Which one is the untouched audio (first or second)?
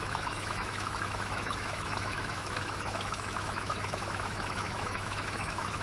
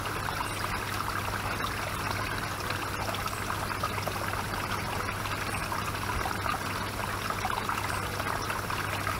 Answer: second